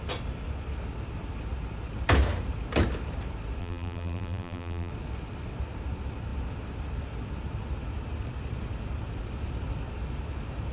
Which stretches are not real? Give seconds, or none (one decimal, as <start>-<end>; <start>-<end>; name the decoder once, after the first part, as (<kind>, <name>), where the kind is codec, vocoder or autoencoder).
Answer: 3.6-4.9 (vocoder, BigVGAN v2)